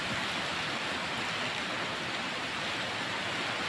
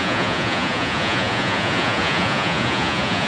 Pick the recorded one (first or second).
first